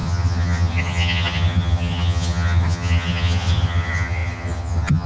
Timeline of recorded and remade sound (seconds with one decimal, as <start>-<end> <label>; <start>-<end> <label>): 0.0-5.1 remade